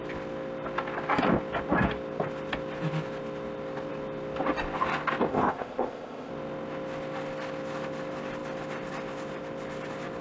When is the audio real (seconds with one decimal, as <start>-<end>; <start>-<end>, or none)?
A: 0.0-5.3; 6.3-10.2